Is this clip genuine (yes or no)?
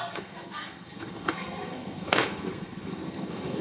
no